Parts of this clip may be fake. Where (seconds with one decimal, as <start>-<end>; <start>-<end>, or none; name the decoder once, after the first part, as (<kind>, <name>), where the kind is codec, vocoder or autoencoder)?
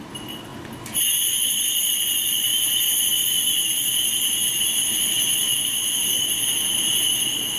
none